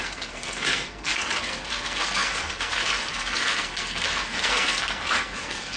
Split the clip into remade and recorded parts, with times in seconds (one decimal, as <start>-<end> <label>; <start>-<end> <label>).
0.0-5.8 remade